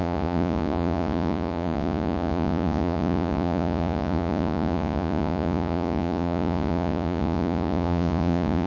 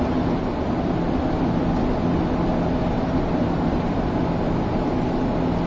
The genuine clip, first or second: second